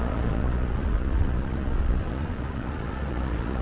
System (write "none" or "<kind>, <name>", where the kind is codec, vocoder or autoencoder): vocoder, Vocos